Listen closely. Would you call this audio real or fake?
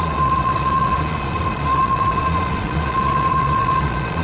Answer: fake